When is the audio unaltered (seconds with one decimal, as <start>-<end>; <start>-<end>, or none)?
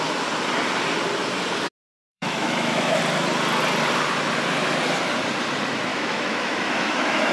0.0-1.8; 3.0-5.9